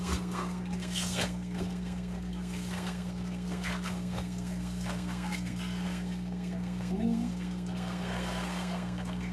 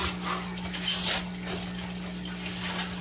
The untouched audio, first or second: second